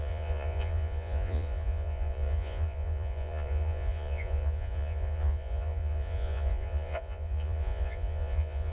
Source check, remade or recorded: remade